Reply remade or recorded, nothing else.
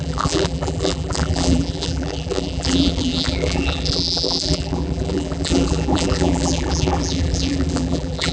remade